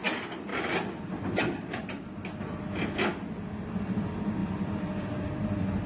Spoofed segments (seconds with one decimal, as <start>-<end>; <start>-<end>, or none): 4.4-5.3